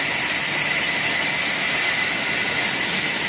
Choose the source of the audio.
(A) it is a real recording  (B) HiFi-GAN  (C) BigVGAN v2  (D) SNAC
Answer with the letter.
A